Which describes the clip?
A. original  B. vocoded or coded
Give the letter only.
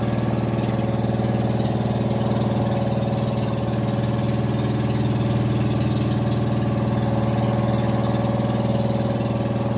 A